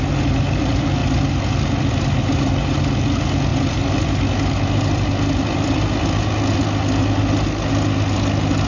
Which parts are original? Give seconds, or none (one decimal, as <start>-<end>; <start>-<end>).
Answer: 0.0-8.7